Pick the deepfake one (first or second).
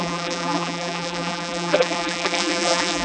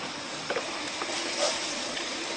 first